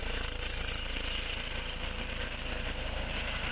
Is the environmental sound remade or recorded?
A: recorded